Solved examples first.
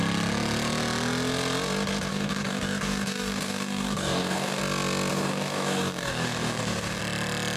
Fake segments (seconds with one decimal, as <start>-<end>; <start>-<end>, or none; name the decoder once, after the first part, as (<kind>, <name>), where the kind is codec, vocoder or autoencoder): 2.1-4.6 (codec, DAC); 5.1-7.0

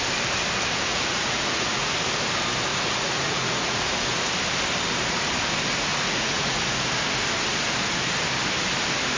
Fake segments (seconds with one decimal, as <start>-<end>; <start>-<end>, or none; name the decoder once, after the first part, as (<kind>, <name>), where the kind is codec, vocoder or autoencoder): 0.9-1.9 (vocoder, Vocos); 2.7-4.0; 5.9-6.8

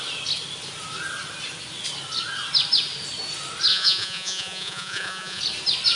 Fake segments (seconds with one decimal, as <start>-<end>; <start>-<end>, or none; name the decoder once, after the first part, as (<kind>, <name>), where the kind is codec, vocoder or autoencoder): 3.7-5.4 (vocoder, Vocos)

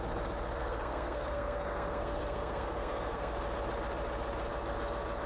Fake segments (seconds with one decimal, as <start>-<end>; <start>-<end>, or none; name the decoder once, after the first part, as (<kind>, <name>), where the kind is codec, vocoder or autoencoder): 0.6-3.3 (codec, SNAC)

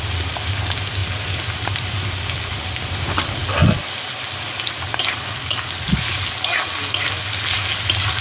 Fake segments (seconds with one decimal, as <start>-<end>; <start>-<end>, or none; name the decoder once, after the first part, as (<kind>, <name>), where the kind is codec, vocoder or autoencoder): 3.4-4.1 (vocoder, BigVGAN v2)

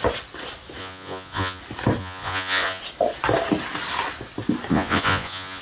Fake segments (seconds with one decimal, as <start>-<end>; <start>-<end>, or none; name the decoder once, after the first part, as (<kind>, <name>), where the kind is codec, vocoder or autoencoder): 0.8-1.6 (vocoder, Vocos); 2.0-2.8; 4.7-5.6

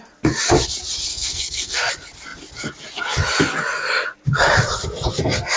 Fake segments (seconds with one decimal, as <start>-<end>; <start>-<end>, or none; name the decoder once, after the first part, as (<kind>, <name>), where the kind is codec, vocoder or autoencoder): 1.1-1.9 (codec, SNAC)

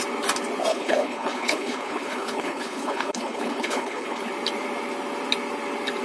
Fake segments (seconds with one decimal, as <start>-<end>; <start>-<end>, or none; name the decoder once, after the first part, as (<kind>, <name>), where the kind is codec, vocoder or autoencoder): 0.7-4.3 (codec, HILCodec)